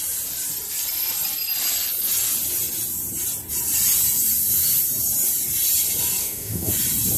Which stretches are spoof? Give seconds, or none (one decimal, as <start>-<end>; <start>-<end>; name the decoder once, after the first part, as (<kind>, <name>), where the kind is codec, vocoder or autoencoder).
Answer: 6.2-6.7 (autoencoder, DAC-VAE)